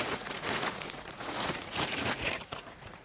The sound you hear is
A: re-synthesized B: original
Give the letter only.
A